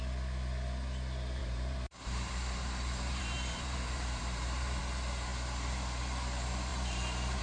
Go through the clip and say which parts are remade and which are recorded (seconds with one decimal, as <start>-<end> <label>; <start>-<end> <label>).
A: 0.0-1.4 recorded; 1.4-4.8 remade; 4.8-6.7 recorded; 6.7-7.4 remade